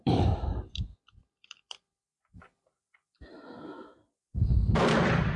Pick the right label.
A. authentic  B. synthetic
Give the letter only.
B